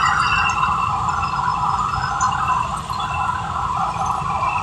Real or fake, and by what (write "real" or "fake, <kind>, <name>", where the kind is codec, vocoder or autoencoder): real